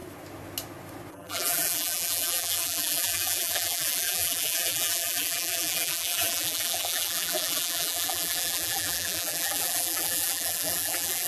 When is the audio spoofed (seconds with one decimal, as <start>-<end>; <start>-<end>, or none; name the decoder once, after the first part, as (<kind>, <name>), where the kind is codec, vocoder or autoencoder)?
1.1-11.3 (vocoder, BigVGAN v2)